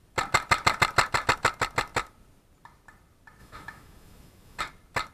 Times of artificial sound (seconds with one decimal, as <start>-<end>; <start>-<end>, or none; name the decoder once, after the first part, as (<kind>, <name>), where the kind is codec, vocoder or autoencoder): 3.4-4.6 (autoencoder, DAC-VAE)